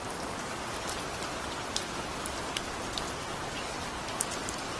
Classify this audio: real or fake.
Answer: real